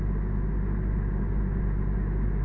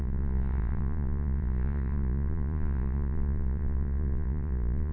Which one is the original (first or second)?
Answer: first